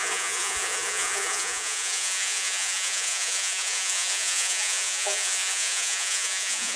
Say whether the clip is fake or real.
fake